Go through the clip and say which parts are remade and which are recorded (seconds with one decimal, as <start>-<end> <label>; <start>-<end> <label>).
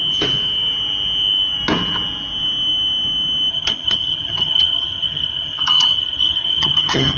0.0-3.5 recorded; 3.5-7.2 remade